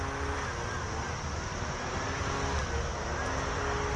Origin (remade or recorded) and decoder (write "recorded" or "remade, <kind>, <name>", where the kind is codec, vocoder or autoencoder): recorded